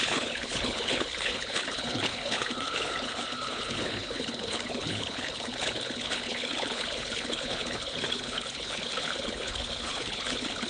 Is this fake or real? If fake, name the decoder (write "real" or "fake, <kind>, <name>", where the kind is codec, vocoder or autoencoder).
fake, codec, HILCodec